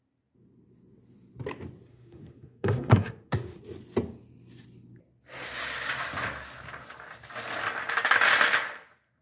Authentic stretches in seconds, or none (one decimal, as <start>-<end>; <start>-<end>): 0.0-1.9; 3.6-9.2